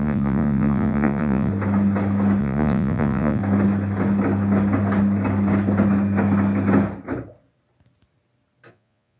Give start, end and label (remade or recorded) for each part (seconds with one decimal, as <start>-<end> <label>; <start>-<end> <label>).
0.0-1.5 remade; 1.5-2.4 recorded; 2.4-3.4 remade; 3.4-8.7 recorded; 8.7-9.2 remade